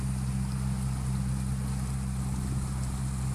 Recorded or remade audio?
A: recorded